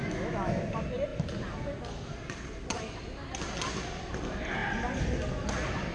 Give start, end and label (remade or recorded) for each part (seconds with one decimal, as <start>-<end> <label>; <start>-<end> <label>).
0.0-0.6 remade; 0.6-5.9 recorded